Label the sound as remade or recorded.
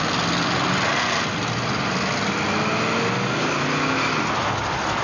recorded